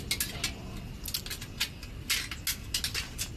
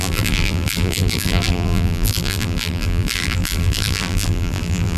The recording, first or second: first